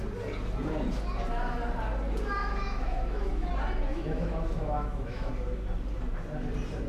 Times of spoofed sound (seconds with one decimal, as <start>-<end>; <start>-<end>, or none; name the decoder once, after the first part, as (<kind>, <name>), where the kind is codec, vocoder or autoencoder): 2.4-3.5 (autoencoder, DAC-VAE); 3.9-5.3